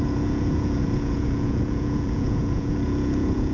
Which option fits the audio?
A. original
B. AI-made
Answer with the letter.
B